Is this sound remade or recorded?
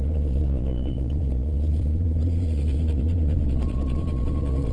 remade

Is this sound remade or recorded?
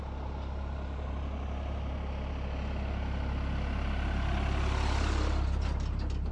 recorded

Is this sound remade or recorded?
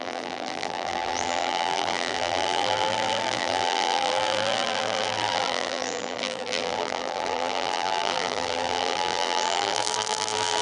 remade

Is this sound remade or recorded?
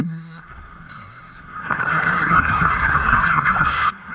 remade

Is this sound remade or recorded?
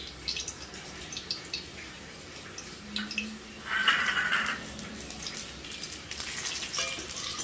recorded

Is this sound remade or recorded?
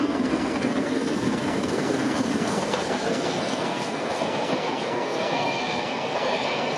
remade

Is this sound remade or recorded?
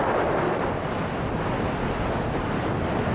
recorded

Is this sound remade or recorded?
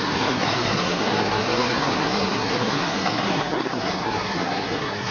remade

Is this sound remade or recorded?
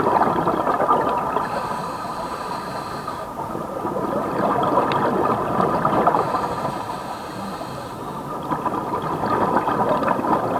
recorded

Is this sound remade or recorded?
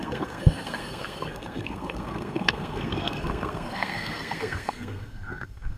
remade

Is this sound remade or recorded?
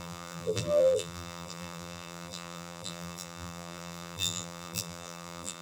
remade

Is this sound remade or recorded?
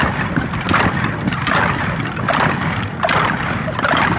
recorded